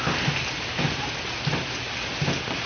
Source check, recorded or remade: recorded